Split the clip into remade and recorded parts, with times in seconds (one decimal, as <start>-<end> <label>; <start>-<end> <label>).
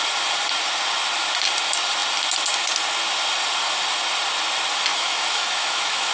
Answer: 0.0-4.9 recorded; 4.9-6.1 remade